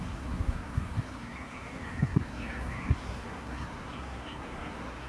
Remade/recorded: remade